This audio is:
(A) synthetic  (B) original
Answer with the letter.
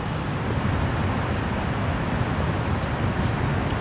B